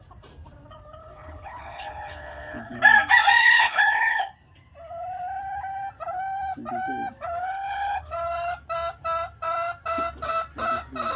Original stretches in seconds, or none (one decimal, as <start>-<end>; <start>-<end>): 0.0-1.0; 2.8-3.4; 4.3-7.4; 8.1-11.2